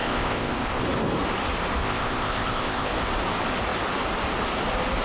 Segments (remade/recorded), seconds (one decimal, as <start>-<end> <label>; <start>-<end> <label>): 0.0-0.8 remade; 0.8-1.8 recorded; 1.8-2.9 remade; 2.9-5.0 recorded